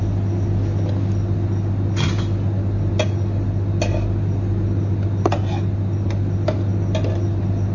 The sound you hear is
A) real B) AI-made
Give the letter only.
A